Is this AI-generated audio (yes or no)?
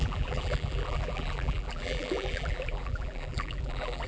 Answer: yes